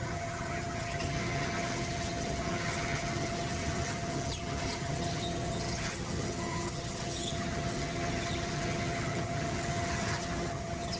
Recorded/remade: remade